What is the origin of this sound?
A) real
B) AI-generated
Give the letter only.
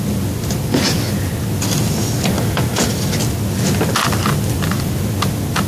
A